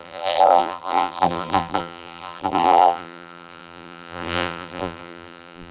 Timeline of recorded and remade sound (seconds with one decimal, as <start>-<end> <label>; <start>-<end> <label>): 0.0-5.7 remade